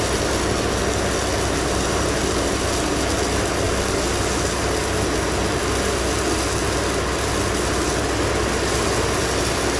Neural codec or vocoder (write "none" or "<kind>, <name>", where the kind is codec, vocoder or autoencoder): none